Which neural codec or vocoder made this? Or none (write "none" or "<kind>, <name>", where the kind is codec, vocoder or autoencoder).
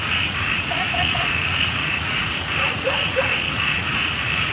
vocoder, Vocos